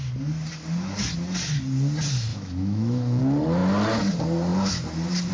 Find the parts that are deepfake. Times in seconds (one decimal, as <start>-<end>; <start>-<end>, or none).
2.3-3.2